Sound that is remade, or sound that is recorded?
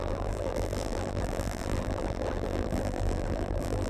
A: remade